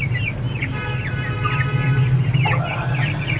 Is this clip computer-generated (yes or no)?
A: no